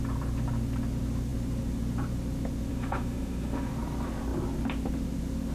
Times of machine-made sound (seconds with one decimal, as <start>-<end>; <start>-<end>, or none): 2.7-3.7